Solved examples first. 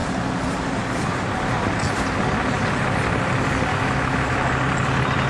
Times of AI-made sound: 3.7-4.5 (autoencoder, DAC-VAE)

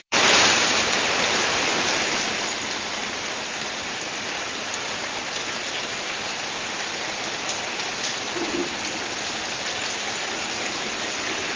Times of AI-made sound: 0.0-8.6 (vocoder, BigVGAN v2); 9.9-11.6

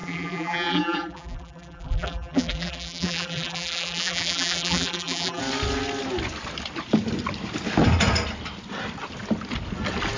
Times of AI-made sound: 0.0-5.4 (vocoder, BigVGAN v2)